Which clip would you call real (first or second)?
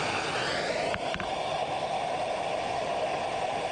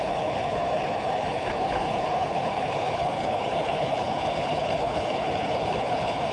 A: first